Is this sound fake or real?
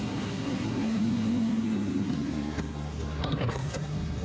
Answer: fake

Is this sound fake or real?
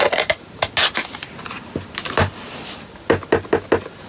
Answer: real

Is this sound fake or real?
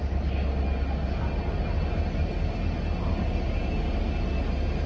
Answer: real